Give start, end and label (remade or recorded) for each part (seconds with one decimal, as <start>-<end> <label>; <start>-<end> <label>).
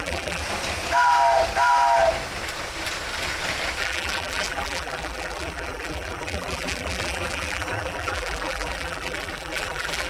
0.0-0.4 remade; 0.4-3.8 recorded; 3.8-10.1 remade